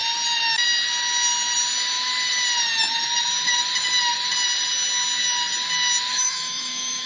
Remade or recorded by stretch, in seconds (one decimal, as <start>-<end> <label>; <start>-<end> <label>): 0.0-6.1 recorded; 6.1-7.1 remade